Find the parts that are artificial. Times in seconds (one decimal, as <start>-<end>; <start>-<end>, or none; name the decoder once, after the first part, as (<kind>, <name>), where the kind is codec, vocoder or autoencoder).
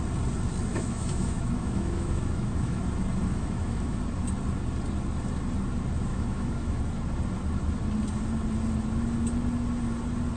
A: 0.7-2.8 (autoencoder, DAC-VAE); 3.2-4.0; 6.1-6.8